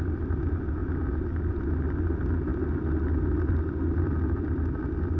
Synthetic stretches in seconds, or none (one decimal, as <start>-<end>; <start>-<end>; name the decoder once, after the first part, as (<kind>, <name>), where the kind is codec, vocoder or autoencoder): none